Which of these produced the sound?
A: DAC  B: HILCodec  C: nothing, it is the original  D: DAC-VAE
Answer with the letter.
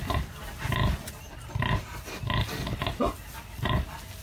C